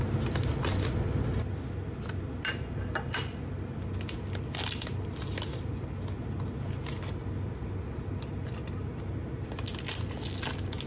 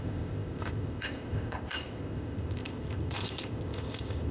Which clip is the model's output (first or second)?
second